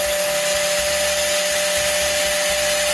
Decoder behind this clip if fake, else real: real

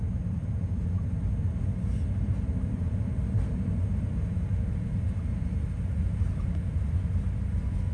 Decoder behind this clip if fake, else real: real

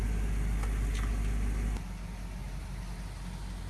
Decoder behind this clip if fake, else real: real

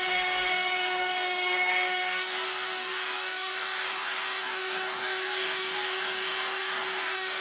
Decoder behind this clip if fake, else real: fake, codec, DAC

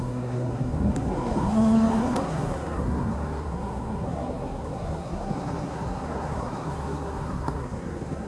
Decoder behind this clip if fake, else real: fake, codec, SNAC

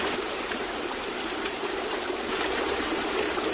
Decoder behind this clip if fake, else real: fake, vocoder, BigVGAN v2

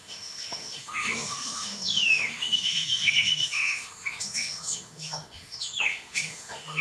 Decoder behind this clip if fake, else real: fake, autoencoder, DAC-VAE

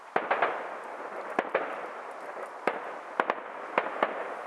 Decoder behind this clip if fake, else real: real